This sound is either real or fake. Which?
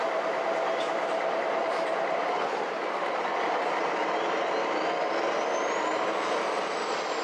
real